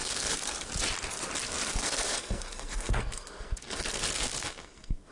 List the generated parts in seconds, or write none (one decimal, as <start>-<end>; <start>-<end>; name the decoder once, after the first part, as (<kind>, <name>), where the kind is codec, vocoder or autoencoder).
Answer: 0.0-0.7 (codec, SNAC); 1.7-5.1